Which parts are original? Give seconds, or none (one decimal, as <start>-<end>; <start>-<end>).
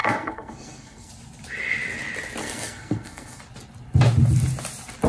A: 1.1-2.4; 3.4-5.1